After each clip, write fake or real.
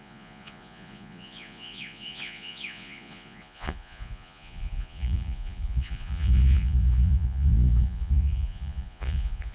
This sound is fake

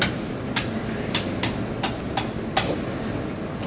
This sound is real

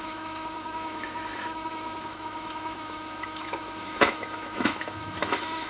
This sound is fake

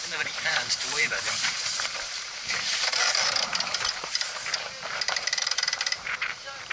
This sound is fake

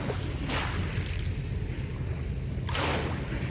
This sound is real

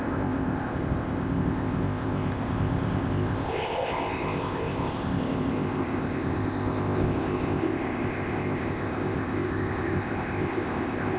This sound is fake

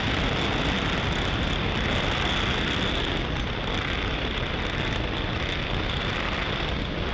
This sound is real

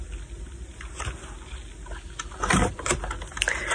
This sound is real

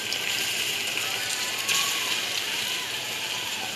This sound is fake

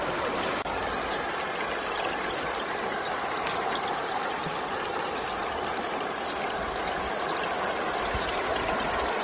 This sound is real